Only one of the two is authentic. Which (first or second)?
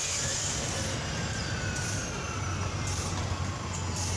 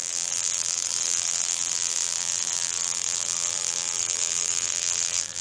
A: first